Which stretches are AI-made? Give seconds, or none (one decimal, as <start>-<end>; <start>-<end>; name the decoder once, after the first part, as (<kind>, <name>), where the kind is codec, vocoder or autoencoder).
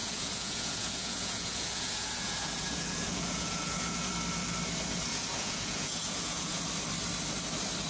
0.0-4.1 (vocoder, Vocos); 5.1-6.6